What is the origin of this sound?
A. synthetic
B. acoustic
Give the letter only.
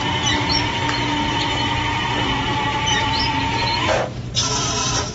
B